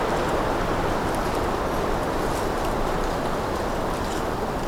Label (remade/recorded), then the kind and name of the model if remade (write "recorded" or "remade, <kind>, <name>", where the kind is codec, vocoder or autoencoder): recorded